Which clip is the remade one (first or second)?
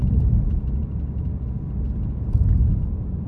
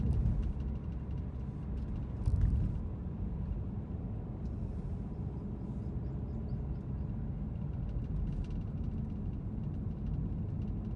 first